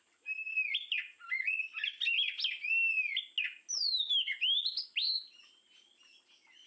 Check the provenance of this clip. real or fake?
real